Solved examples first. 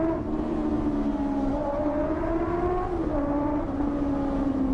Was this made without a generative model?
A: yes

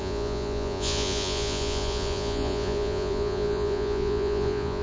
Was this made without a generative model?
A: no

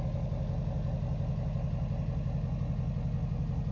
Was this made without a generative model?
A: yes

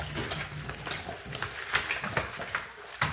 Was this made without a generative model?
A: yes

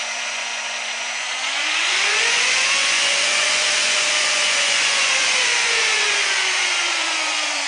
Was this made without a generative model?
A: no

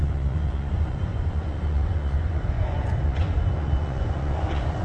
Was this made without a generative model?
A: no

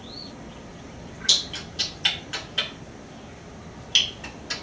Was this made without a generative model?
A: yes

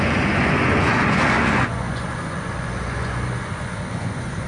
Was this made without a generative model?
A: no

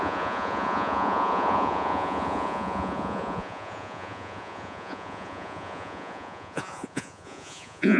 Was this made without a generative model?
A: no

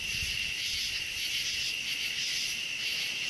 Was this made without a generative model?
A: yes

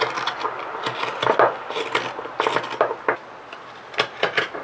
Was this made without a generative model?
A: yes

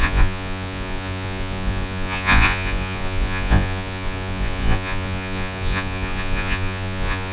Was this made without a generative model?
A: no